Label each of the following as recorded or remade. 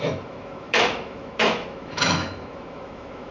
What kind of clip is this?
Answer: remade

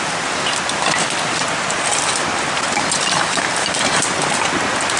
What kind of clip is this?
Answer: recorded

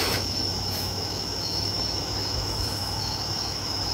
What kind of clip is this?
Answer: remade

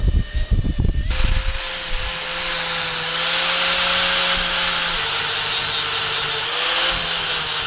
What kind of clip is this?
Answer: recorded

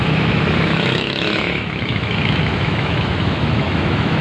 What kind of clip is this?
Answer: remade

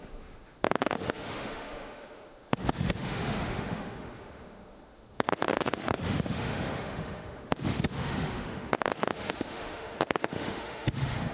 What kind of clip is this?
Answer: remade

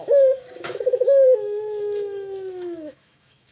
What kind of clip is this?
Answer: remade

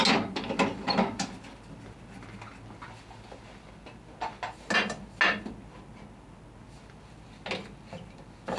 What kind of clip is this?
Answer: recorded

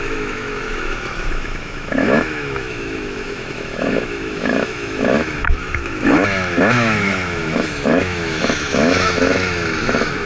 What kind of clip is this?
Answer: remade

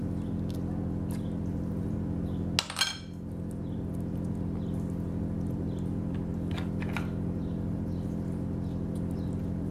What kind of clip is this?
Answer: recorded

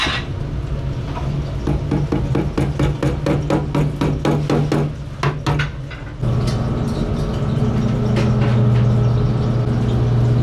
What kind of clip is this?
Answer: recorded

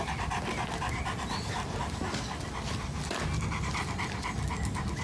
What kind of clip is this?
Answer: recorded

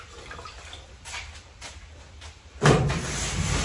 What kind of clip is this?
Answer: recorded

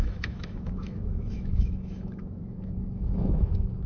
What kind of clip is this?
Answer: remade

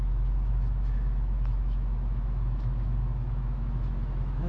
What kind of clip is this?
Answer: remade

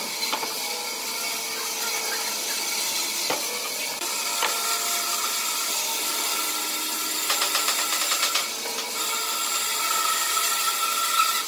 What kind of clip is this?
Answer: recorded